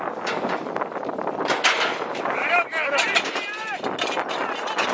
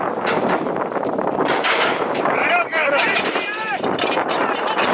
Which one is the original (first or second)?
first